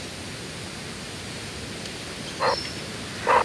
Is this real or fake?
real